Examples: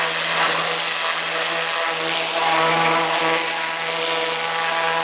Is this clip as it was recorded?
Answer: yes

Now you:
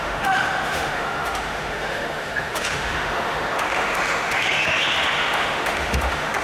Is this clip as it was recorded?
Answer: no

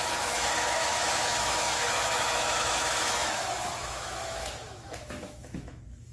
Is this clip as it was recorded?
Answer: no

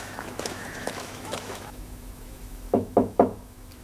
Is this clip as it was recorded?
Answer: no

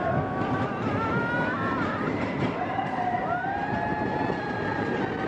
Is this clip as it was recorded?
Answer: yes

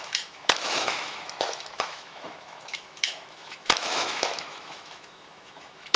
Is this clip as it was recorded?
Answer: no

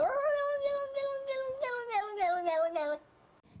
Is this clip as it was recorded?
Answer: no